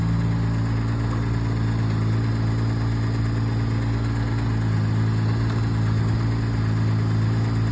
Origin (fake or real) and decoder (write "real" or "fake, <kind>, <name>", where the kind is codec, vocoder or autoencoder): real